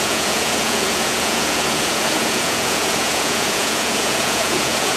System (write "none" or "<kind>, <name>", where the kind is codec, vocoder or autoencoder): vocoder, Vocos